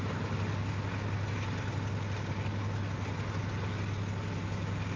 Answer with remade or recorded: recorded